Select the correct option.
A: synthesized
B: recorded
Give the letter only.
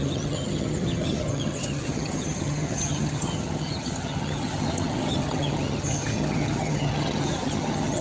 A